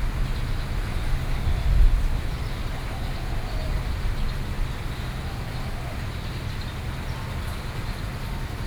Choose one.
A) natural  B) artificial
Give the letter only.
A